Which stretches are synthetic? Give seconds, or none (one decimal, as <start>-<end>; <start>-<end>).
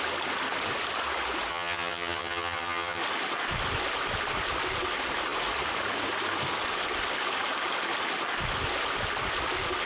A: 1.5-3.0